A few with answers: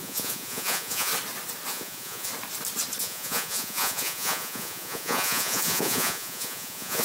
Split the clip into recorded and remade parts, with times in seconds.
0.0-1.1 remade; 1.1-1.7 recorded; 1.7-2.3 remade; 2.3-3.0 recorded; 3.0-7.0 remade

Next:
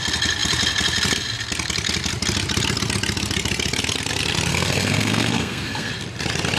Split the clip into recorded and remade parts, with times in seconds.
0.0-4.5 recorded; 4.5-5.9 remade; 5.9-6.6 recorded

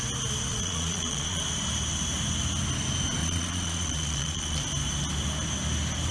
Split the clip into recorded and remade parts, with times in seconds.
0.0-0.5 recorded; 0.5-1.4 remade; 1.4-3.2 recorded; 3.2-4.6 remade; 4.6-6.1 recorded

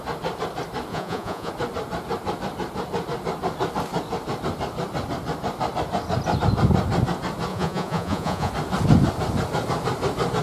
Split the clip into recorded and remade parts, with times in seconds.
0.0-0.9 recorded; 0.9-1.5 remade; 1.5-7.5 recorded; 7.5-8.5 remade; 8.5-10.4 recorded

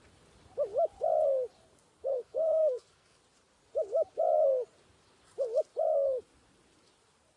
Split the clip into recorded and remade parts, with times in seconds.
0.0-2.1 recorded; 2.1-3.2 remade; 3.2-7.4 recorded

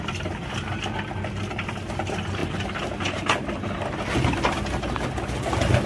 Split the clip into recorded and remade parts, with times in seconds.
0.0-5.9 recorded

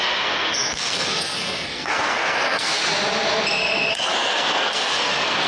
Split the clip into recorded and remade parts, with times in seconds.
0.0-2.8 remade; 2.8-3.9 recorded; 3.9-5.5 remade